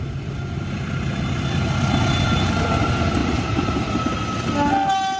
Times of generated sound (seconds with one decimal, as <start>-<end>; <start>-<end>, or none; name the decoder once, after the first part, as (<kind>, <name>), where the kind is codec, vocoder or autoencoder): 3.2-3.9 (vocoder, BigVGAN v2)